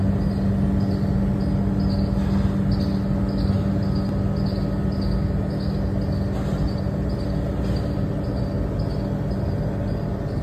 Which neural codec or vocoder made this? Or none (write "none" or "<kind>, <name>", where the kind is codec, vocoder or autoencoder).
none